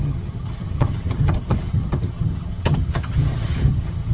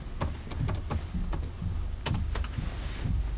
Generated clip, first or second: first